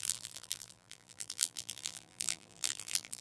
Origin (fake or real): fake